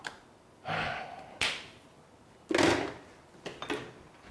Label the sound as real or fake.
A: real